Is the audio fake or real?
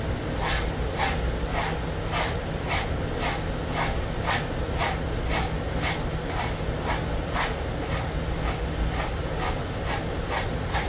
real